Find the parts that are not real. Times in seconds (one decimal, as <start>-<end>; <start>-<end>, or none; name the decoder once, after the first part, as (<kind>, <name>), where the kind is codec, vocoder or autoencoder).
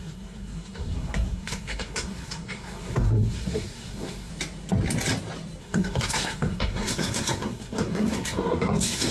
0.0-4.3 (codec, SNAC); 5.6-9.1